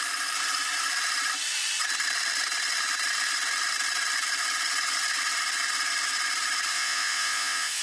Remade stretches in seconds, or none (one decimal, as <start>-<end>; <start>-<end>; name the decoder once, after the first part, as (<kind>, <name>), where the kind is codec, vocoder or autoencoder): 6.7-7.8 (vocoder, Vocos)